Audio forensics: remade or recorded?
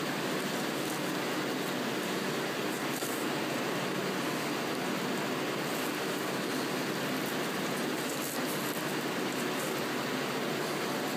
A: recorded